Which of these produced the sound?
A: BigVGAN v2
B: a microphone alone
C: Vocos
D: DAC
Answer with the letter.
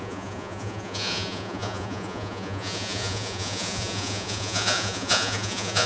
C